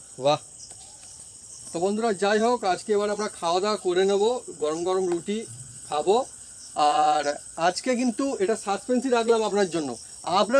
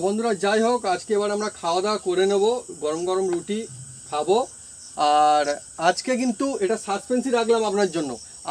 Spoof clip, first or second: first